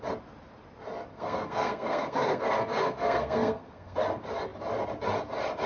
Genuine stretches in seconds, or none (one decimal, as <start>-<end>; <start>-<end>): 0.0-1.1; 4.0-5.7